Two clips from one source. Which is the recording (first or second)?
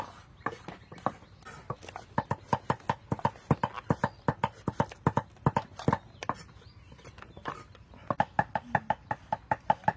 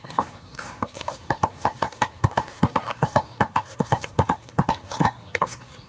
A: first